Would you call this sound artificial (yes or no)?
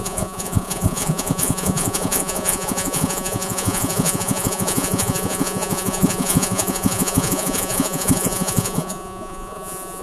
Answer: yes